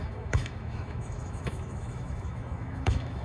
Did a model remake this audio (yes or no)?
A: yes